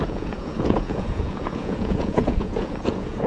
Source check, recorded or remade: remade